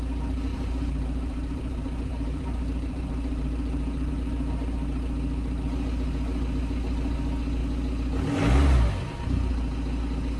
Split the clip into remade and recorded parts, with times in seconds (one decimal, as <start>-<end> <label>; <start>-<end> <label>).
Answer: 0.0-0.5 recorded; 0.5-4.1 remade; 4.1-10.4 recorded